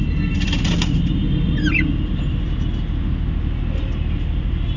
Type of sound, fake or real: real